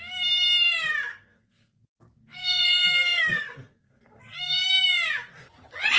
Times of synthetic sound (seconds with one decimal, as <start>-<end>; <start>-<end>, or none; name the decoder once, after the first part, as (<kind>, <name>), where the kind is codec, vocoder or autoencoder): 1.1-4.7 (codec, SNAC)